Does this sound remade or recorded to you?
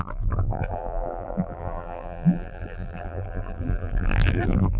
remade